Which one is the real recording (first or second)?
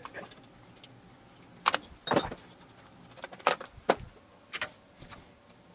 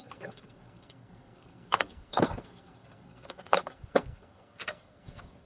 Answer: first